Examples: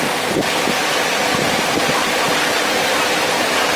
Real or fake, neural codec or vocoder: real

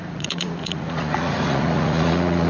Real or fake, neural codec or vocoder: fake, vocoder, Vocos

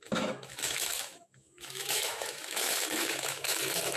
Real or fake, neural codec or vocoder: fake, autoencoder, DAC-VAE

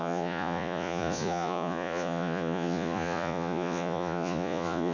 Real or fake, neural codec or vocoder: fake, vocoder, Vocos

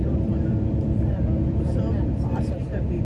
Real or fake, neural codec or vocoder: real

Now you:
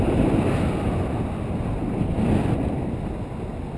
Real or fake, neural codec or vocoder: real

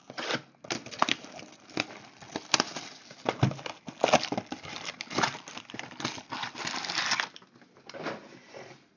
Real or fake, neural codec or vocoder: real